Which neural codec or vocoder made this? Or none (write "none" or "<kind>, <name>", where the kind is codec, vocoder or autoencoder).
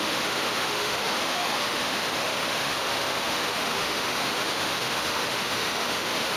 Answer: autoencoder, DAC-VAE